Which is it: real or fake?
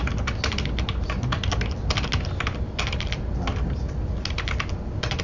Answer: real